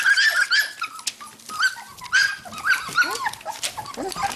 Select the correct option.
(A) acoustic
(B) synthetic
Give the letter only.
A